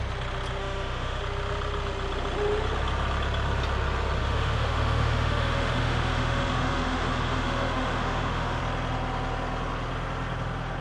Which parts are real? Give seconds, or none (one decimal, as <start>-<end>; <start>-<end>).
0.0-0.6; 1.2-4.2; 8.6-10.8